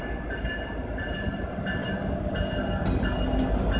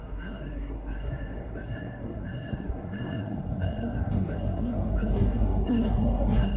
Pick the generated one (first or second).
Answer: second